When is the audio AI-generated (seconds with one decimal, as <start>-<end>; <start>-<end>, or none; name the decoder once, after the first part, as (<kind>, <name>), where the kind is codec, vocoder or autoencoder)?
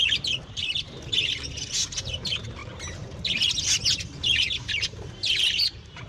0.0-0.6 (vocoder, BigVGAN v2); 1.6-2.6; 4.6-6.1